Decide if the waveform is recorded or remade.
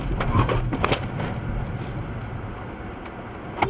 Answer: recorded